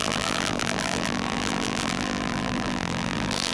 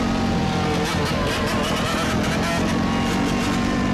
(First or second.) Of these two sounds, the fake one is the first